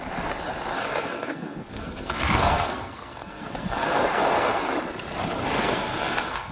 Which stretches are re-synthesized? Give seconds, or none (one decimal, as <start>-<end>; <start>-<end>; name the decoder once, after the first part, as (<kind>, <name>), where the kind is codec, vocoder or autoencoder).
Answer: 0.7-4.6 (codec, SNAC); 5.4-6.5